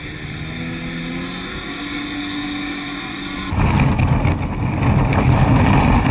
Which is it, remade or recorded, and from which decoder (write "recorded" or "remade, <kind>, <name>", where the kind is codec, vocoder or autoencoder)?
recorded